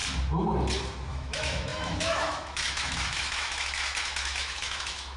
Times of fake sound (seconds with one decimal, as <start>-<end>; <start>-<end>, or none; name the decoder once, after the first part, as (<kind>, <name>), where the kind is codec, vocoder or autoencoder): 1.1-5.2 (autoencoder, DAC-VAE)